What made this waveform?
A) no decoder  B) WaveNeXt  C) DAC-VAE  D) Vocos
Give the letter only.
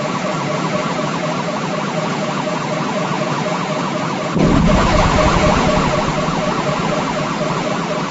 D